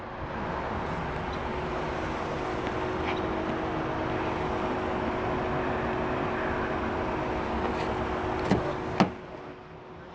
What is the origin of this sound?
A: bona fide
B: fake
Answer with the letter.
A